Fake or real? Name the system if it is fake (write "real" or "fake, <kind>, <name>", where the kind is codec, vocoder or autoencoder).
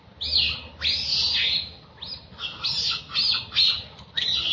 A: real